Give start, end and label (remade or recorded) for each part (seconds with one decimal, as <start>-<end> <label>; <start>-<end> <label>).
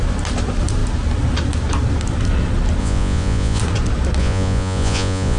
0.0-2.8 recorded; 2.8-3.6 remade; 3.6-4.2 recorded; 4.2-5.4 remade